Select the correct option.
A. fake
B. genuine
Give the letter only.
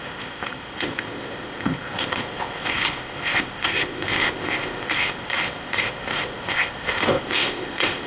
A